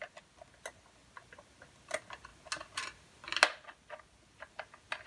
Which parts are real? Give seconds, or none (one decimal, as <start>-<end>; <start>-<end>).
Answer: 0.0-5.1